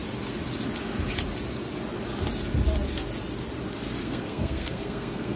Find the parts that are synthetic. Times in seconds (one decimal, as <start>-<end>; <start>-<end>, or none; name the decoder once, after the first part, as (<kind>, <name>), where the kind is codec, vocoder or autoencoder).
4.0-5.4 (codec, SNAC)